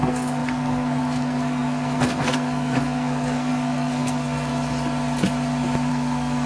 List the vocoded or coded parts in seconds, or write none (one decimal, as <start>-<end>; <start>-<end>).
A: 0.0-4.5; 5.9-6.5